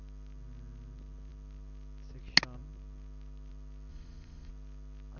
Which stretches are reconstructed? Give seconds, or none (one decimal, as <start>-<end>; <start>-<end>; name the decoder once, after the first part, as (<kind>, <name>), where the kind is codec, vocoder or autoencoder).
3.9-4.5 (vocoder, Vocos)